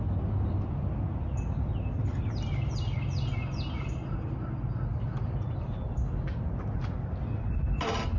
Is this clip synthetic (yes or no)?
no